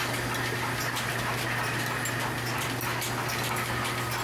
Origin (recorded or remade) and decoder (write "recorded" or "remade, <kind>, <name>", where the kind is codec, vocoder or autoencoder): recorded